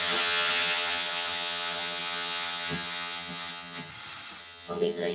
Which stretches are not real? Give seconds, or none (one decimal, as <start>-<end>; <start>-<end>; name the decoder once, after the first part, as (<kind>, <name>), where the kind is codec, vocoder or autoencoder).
0.0-3.9 (vocoder, HiFi-GAN); 4.4-5.1

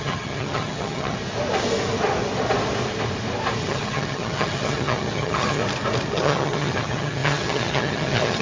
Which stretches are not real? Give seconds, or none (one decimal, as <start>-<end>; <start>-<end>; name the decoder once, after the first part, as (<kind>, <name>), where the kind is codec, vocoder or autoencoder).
0.0-1.2 (vocoder, HiFi-GAN); 3.6-5.6; 6.1-8.4

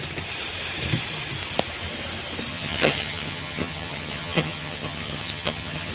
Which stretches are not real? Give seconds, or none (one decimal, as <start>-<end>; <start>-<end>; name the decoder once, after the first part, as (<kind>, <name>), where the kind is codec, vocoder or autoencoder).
2.5-5.9 (vocoder, HiFi-GAN)

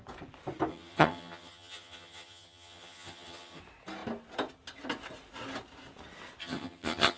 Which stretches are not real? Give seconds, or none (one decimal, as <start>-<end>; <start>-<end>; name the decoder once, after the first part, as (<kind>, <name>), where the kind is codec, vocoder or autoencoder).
0.7-3.6 (vocoder, HiFi-GAN); 6.4-7.2

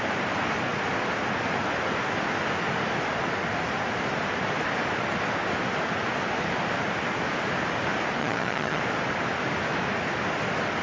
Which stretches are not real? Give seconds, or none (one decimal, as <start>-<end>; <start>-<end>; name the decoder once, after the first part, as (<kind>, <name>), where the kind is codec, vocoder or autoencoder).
8.2-8.8 (vocoder, HiFi-GAN)

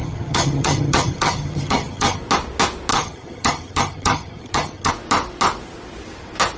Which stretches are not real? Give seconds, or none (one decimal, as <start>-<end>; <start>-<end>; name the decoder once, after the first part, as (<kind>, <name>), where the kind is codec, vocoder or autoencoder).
0.0-2.2 (vocoder, HiFi-GAN); 2.9-4.9

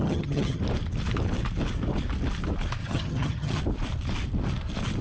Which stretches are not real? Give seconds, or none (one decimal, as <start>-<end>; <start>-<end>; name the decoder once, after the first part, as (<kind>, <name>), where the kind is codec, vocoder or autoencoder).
0.0-0.6 (vocoder, HiFi-GAN); 2.8-3.6